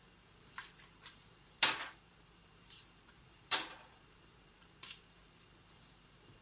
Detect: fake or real fake